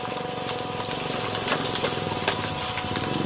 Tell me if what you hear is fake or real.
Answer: real